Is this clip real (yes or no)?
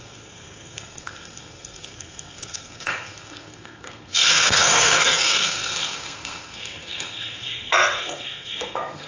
no